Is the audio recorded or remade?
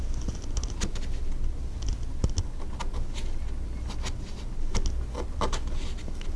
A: recorded